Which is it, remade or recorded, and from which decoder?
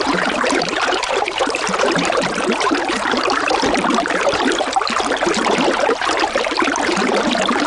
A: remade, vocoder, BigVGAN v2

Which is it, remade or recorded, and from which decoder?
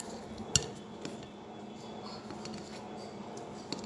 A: recorded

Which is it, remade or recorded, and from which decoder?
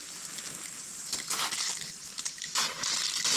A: recorded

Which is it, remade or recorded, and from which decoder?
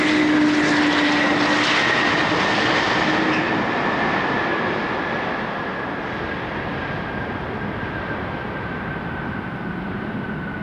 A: recorded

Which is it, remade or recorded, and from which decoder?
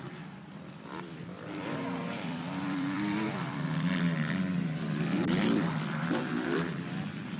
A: remade, vocoder, BigVGAN v2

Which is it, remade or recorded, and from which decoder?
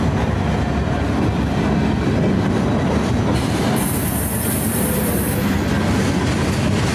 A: recorded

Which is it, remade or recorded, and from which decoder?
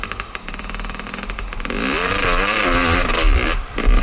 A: remade, vocoder, BigVGAN v2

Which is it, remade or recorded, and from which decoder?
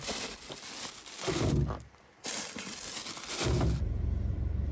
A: recorded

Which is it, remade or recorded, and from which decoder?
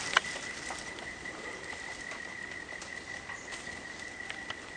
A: remade, vocoder, BigVGAN v2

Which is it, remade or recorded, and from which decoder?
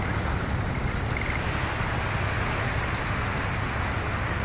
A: recorded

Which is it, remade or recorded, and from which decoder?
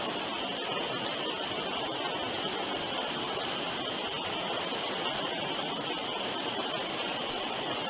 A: recorded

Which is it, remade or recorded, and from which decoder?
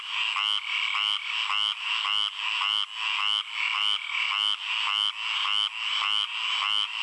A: recorded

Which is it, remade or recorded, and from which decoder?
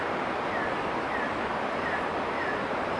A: recorded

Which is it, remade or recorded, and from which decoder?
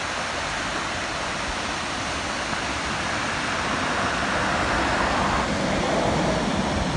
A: recorded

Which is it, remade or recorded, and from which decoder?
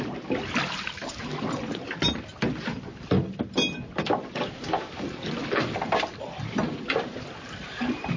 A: remade, vocoder, BigVGAN v2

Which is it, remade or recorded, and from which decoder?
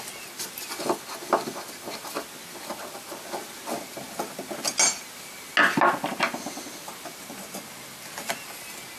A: recorded